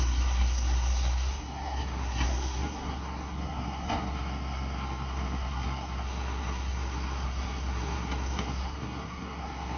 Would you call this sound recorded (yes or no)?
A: no